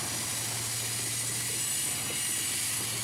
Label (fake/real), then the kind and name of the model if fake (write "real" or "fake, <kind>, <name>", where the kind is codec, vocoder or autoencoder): real